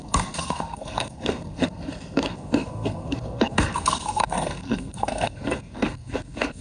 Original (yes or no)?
no